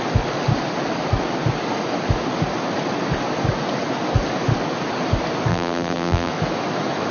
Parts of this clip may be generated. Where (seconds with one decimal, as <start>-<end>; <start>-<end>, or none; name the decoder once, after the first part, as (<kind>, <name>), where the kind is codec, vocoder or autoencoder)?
5.5-6.3 (vocoder, BigVGAN v2)